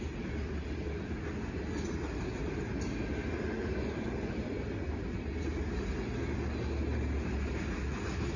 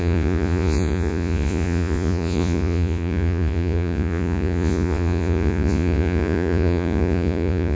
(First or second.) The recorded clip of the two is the first